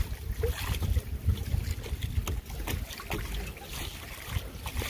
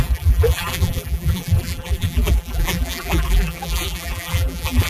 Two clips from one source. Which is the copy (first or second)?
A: second